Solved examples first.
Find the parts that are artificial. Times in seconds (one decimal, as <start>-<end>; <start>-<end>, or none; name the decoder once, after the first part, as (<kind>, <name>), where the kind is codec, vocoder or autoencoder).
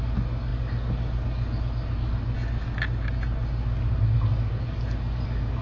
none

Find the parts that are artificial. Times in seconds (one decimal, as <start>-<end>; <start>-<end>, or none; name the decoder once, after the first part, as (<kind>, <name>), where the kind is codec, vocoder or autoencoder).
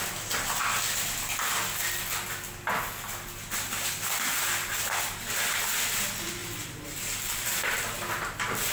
6.4-7.6 (vocoder, BigVGAN v2)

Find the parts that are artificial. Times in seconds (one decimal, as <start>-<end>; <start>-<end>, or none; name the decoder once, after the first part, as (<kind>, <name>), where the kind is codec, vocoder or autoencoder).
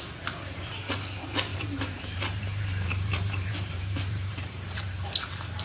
1.5-4.9 (vocoder, BigVGAN v2)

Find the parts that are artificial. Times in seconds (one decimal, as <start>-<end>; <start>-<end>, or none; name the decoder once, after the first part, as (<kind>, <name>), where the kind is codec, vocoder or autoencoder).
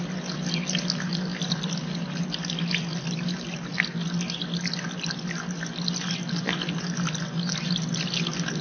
1.3-2.2 (vocoder, BigVGAN v2)